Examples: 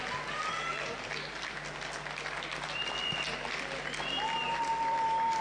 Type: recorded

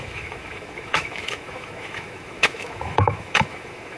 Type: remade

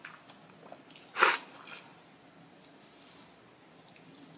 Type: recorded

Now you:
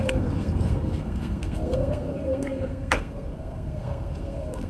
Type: remade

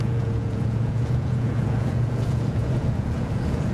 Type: remade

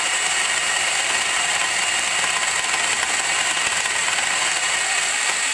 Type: remade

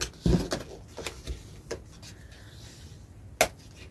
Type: recorded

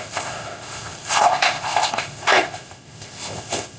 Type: remade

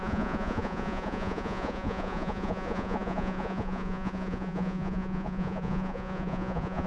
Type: remade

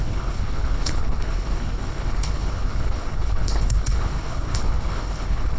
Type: remade